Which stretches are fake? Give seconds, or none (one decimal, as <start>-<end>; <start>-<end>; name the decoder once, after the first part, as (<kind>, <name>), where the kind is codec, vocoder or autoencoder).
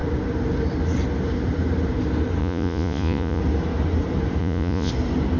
2.4-3.4 (vocoder, Vocos); 4.4-4.9